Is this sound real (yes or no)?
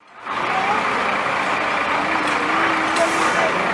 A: yes